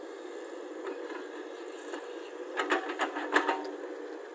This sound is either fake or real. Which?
real